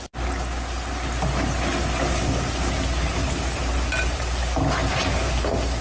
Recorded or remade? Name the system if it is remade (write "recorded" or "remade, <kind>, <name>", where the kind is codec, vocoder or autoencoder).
recorded